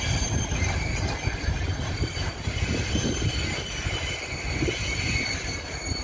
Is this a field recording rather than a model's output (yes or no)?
yes